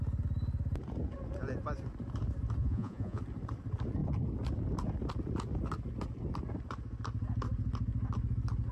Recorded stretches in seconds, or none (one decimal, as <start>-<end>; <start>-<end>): 0.0-2.6; 3.2-8.7